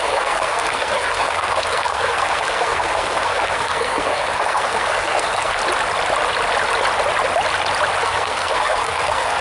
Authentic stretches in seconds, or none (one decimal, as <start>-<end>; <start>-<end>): 5.6-8.0